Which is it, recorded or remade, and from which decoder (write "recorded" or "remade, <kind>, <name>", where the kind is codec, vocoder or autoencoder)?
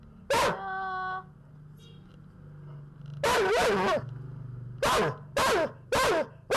recorded